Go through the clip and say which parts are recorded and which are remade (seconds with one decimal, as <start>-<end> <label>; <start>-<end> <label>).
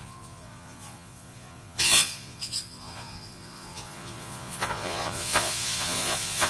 0.0-6.5 remade